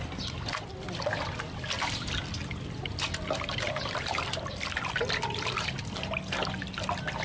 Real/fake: real